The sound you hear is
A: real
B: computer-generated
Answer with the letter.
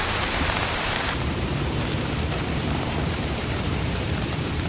B